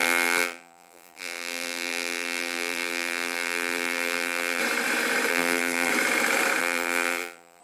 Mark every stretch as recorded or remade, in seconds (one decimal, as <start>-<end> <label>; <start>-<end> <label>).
0.0-4.6 remade; 4.6-5.3 recorded; 5.3-5.9 remade; 5.9-6.6 recorded; 6.6-7.6 remade